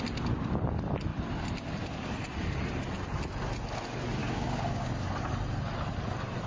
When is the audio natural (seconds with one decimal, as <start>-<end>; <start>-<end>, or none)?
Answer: 0.0-4.2; 4.8-6.5